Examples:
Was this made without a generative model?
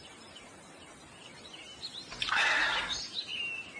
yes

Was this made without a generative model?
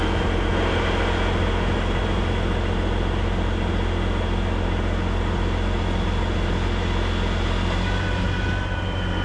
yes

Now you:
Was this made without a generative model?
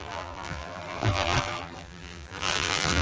no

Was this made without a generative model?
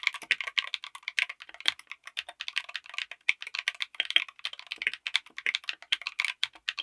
yes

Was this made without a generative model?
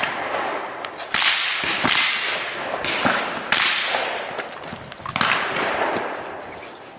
yes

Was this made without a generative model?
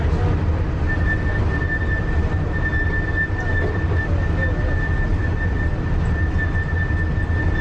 yes